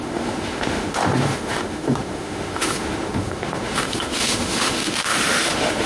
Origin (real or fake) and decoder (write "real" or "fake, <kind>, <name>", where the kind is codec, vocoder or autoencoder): fake, autoencoder, DAC-VAE